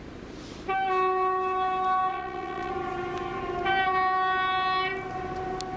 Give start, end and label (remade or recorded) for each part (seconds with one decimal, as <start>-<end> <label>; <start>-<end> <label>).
0.0-2.1 recorded; 2.1-2.7 remade; 2.7-5.8 recorded